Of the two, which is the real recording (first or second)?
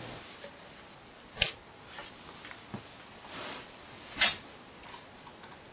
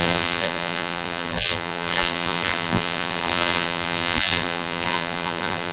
first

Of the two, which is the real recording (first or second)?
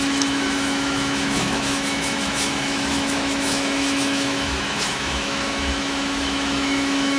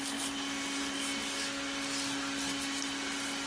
second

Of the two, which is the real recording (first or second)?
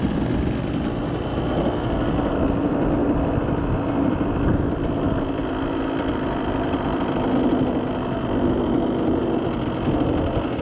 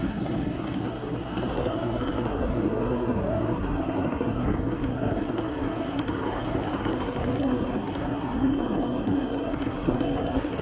first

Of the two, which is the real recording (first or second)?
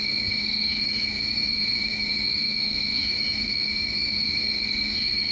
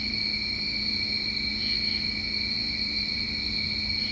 second